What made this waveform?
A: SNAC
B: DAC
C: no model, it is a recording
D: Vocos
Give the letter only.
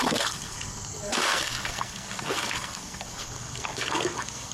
A